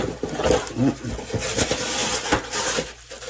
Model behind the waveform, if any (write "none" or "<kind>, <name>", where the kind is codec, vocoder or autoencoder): none